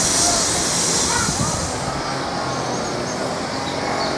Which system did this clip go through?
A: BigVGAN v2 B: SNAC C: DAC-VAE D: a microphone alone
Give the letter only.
D